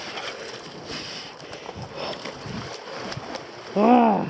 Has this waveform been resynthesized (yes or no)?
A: no